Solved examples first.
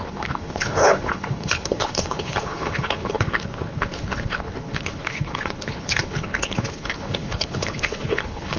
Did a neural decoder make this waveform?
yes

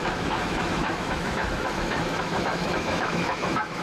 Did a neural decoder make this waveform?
yes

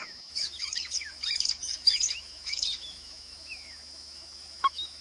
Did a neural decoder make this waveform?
yes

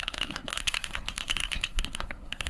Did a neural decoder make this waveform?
yes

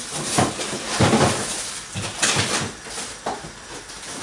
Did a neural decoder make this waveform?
no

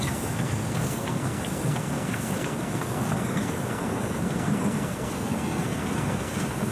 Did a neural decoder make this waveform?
yes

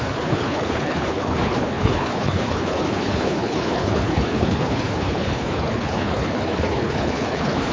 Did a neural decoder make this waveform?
yes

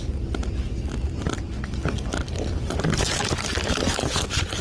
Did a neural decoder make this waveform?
no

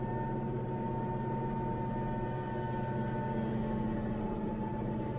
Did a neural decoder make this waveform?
no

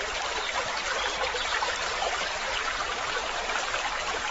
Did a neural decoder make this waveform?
yes